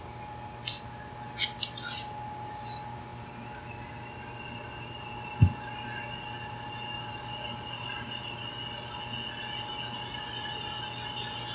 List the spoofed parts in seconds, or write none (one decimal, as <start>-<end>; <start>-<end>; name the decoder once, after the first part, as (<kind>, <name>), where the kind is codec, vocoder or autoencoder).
none